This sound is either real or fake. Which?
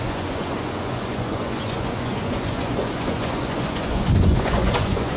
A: fake